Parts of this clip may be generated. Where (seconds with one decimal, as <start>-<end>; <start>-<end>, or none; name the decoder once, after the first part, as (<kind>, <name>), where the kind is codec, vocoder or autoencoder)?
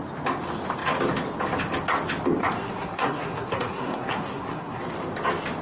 2.4-4.8 (codec, SNAC)